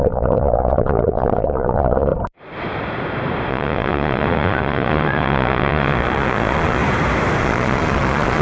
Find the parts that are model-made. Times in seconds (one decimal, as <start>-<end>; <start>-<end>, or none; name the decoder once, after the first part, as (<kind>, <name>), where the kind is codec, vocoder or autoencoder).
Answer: 0.0-2.1 (vocoder, Vocos); 3.5-6.8; 7.4-8.4

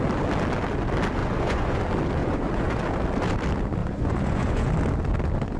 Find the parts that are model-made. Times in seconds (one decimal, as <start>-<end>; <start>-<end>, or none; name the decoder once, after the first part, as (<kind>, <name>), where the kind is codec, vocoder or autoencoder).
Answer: 1.2-1.8 (vocoder, Vocos); 2.2-2.8; 3.8-4.7